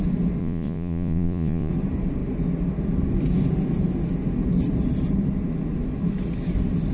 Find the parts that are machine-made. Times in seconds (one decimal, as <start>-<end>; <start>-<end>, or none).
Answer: 0.4-1.7